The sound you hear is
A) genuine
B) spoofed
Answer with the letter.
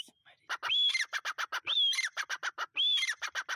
A